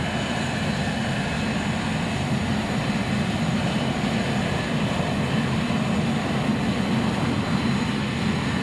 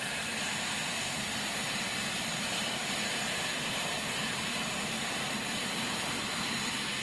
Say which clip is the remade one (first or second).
second